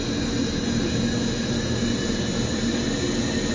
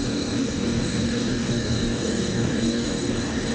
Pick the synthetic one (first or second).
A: second